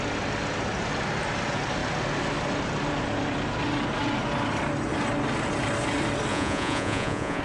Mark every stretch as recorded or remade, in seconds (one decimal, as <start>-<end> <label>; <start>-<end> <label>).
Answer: 0.0-6.3 recorded; 6.3-7.4 remade